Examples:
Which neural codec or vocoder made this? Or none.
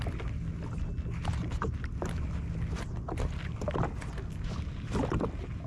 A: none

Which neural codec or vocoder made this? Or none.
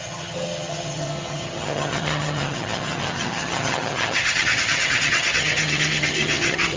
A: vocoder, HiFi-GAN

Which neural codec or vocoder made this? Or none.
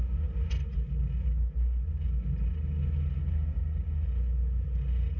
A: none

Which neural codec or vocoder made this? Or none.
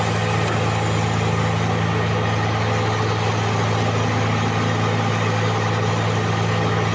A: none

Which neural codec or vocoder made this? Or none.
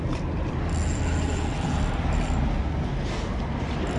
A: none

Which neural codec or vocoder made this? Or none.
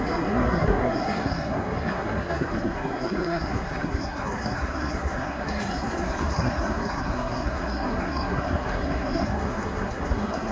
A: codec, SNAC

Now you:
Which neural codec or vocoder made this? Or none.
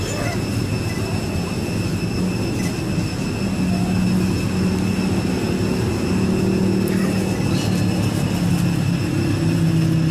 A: none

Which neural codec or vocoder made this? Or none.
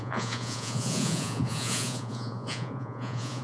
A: vocoder, Vocos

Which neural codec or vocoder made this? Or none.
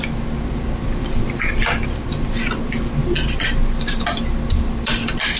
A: none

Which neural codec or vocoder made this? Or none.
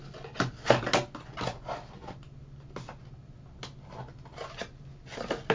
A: none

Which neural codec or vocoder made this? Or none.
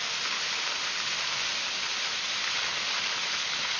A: none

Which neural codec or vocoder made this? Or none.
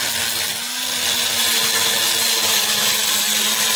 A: none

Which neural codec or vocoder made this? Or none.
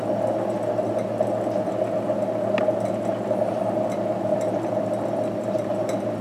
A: none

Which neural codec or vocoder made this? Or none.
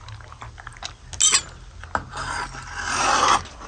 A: none